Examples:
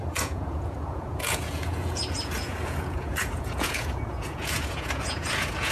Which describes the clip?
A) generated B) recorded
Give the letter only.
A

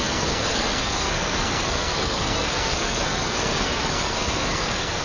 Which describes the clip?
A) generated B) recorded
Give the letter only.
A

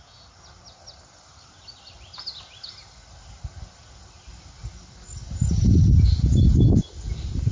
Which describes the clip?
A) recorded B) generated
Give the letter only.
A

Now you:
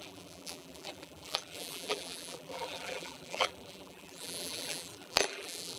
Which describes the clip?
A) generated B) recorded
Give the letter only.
A